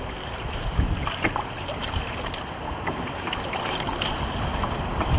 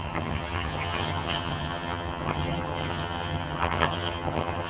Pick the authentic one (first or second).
first